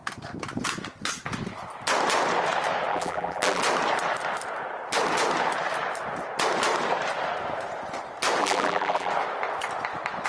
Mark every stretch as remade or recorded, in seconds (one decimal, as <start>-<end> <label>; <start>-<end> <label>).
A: 0.0-2.9 recorded; 2.9-3.6 remade; 3.6-8.4 recorded; 8.4-9.1 remade; 9.1-10.3 recorded